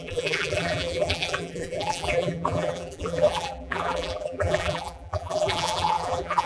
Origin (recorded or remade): remade